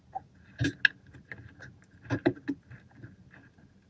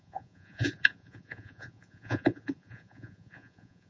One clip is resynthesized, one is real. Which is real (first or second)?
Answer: first